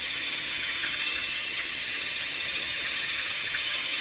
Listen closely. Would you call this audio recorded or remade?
remade